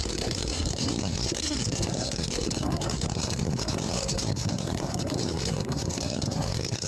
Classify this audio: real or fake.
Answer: fake